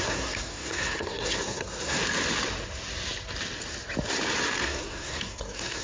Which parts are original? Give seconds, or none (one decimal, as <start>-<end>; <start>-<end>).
2.0-4.6